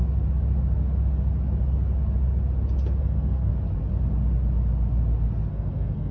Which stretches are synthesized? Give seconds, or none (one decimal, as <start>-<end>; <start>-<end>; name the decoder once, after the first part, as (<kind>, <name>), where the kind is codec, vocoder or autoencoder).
3.0-3.5 (codec, SNAC); 5.5-6.1